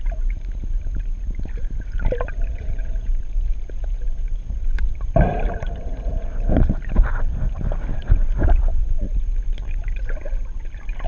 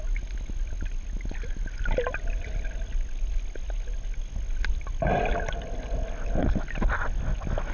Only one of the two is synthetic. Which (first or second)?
first